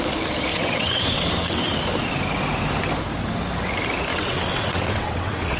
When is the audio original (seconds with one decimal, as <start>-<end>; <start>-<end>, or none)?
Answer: 0.0-0.5; 1.7-4.1